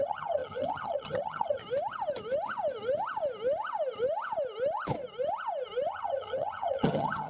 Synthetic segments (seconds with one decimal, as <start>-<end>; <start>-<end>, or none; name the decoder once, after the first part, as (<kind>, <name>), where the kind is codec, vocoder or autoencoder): 0.0-1.6 (vocoder, HiFi-GAN); 5.9-7.3